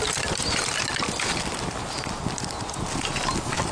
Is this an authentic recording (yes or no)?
yes